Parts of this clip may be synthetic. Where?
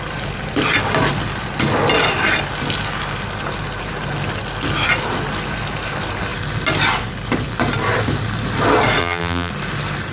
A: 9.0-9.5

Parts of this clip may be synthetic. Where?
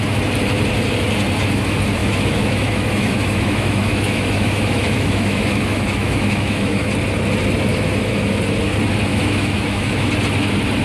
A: 2.0-6.9; 7.7-8.4; 9.1-10.1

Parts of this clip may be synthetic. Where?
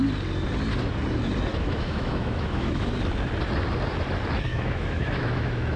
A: 1.5-2.9; 4.5-5.8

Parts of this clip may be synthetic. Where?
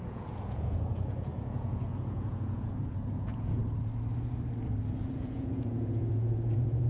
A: 0.0-3.6; 5.0-6.9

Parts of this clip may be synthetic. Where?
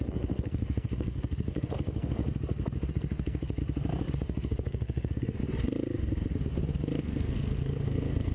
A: 0.0-2.2; 2.9-3.6; 4.1-5.4; 7.0-8.3